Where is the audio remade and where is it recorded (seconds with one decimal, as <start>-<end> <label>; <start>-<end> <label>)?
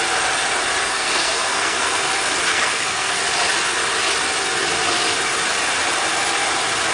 0.0-0.8 recorded; 0.8-2.1 remade; 2.1-2.5 recorded; 2.5-3.2 remade; 3.2-6.9 recorded